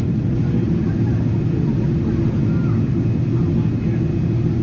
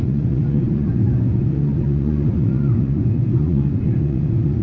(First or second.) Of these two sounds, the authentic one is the first